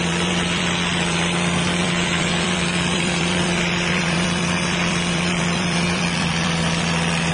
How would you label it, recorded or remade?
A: remade